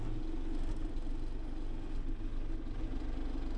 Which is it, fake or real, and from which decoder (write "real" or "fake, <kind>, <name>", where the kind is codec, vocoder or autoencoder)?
real